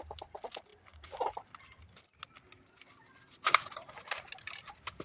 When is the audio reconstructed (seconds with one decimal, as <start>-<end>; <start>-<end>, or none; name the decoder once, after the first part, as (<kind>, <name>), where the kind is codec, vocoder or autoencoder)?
none